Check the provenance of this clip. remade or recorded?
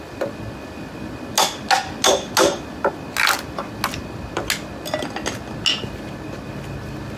recorded